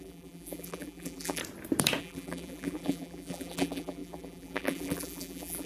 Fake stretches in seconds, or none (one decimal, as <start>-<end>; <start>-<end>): 0.0-1.4; 2.0-5.7